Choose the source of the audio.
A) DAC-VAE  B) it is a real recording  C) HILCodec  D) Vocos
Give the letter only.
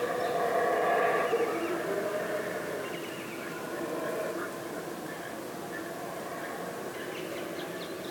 B